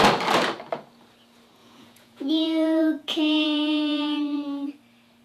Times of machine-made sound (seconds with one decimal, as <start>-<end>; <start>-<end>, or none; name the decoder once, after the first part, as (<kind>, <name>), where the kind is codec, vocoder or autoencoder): 1.6-4.7 (vocoder, Vocos)